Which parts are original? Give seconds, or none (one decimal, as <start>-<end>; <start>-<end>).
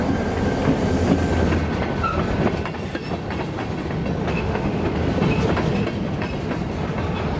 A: 0.0-4.3; 4.8-7.4